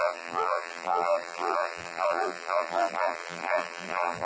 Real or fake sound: fake